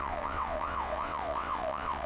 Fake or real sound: fake